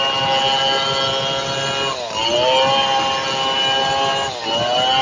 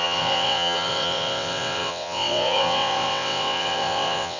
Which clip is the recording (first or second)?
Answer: first